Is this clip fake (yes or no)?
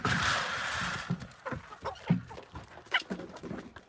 no